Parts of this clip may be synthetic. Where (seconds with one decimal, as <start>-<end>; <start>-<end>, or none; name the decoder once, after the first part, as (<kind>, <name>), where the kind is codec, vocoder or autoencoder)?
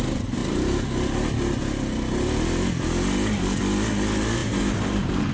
4.4-5.3 (vocoder, BigVGAN v2)